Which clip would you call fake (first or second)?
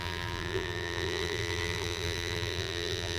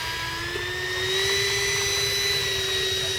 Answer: first